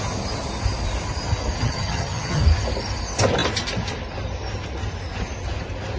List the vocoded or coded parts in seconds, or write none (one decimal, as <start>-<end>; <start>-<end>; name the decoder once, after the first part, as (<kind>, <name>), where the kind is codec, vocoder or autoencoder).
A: 1.6-2.4 (vocoder, HiFi-GAN)